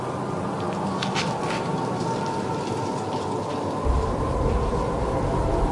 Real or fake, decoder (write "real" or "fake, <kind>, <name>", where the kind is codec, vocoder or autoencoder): real